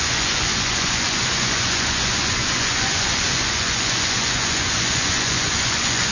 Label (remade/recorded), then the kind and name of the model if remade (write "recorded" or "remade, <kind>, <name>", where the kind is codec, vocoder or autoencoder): remade, vocoder, Vocos